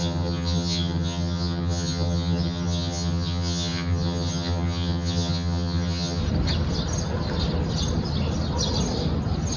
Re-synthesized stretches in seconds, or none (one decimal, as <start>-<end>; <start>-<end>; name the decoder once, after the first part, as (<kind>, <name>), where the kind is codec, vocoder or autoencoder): 0.0-6.2 (vocoder, HiFi-GAN)

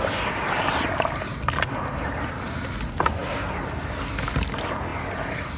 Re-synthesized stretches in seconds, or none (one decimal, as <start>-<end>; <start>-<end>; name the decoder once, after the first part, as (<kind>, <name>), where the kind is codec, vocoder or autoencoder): none

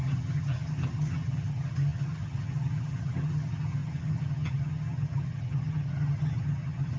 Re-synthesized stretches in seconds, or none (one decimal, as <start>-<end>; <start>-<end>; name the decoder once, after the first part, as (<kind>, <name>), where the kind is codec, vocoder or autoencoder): 0.0-7.0 (vocoder, HiFi-GAN)

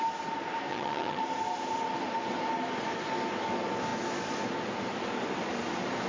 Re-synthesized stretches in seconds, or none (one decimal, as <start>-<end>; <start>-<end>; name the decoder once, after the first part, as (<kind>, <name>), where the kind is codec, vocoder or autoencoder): 0.7-1.2 (vocoder, HiFi-GAN)

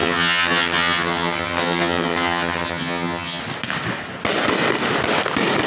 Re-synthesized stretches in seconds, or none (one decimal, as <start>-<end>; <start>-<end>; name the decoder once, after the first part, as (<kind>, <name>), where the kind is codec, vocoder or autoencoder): 0.0-3.4 (vocoder, HiFi-GAN)